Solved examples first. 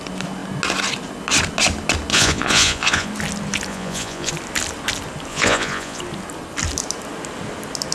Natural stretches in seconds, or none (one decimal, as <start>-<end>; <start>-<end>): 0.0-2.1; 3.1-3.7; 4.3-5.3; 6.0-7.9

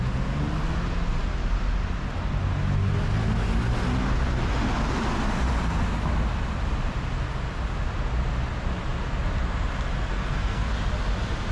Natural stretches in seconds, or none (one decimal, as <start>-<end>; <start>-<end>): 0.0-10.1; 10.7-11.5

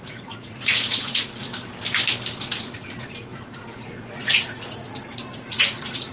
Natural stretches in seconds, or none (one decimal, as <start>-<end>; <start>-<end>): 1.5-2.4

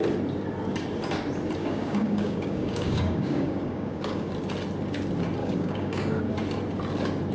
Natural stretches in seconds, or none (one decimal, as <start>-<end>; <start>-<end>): 0.0-1.6; 4.3-5.4; 6.2-7.3

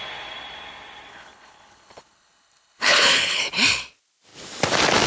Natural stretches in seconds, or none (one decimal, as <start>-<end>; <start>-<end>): 0.0-1.1; 3.4-5.1

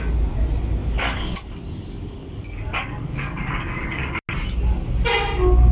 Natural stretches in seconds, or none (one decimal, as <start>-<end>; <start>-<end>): 0.0-0.8; 4.2-5.7

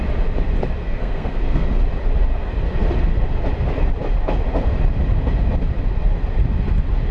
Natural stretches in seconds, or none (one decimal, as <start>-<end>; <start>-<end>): 0.0-0.8; 1.8-7.1